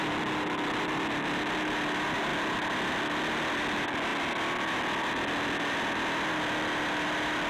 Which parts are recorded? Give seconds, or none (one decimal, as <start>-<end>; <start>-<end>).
0.0-7.5